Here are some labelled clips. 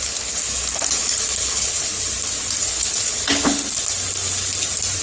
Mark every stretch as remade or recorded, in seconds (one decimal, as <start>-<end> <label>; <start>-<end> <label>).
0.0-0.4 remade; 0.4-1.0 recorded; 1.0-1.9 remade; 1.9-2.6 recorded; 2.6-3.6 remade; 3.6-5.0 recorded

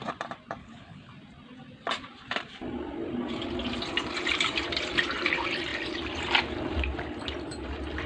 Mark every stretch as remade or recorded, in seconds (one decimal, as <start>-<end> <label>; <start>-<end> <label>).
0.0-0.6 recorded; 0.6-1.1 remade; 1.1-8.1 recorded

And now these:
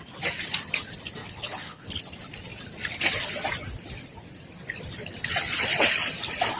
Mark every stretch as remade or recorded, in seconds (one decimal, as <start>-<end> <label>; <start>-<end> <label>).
0.0-1.2 recorded; 1.2-2.0 remade; 2.0-6.6 recorded

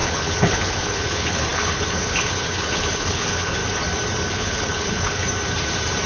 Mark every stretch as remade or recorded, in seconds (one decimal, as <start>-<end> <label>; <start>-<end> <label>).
0.0-3.6 remade; 3.6-4.3 recorded; 4.3-5.2 remade; 5.2-6.1 recorded

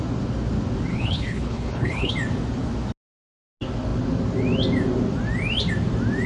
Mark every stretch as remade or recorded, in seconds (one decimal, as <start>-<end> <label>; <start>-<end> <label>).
0.0-0.9 recorded; 0.9-2.1 remade; 2.1-6.3 recorded